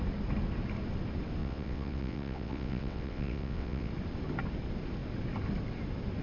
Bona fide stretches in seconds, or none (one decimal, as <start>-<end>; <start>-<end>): 0.0-1.4; 3.9-6.2